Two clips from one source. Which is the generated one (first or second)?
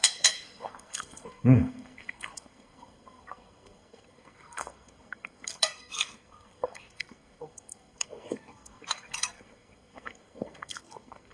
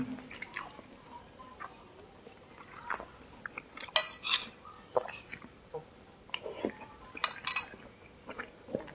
first